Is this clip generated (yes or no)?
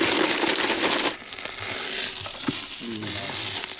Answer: no